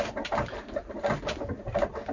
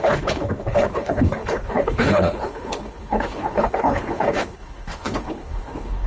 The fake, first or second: second